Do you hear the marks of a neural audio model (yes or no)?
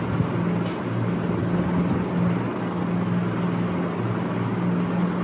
no